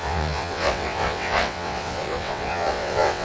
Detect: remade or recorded remade